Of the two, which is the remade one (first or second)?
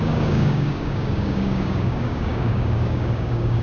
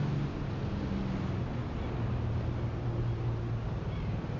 first